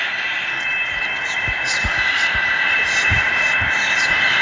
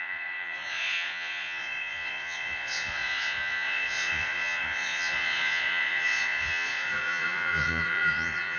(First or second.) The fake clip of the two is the second